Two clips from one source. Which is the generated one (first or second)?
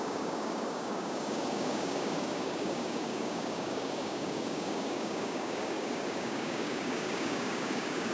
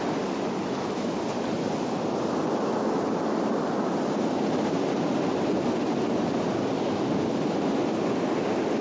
first